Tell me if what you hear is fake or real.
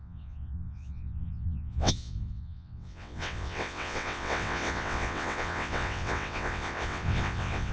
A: fake